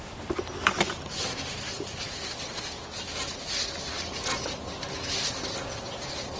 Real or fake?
real